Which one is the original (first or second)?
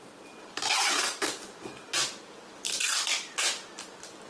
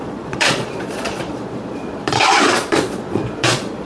first